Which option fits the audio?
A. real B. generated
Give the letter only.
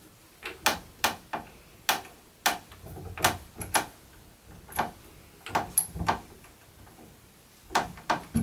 A